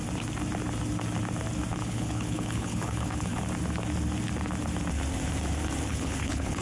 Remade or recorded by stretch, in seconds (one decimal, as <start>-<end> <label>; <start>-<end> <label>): 0.0-1.7 recorded; 1.7-3.4 remade; 3.4-5.9 recorded; 5.9-6.6 remade